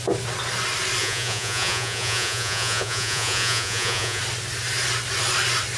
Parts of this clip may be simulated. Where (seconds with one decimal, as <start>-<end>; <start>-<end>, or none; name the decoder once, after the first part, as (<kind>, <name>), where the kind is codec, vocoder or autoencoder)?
1.0-4.2 (vocoder, Vocos)